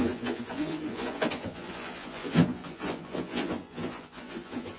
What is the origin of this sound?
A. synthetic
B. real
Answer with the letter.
A